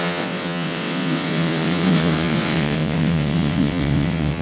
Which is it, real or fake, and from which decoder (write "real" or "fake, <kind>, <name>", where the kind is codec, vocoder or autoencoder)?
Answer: fake, vocoder, WaveNeXt